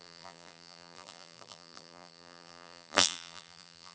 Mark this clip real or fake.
fake